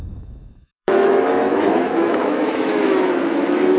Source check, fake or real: fake